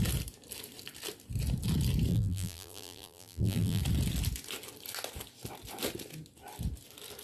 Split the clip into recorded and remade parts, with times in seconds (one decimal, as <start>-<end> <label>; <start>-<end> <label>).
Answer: 0.0-2.1 recorded; 2.1-3.8 remade; 3.8-7.2 recorded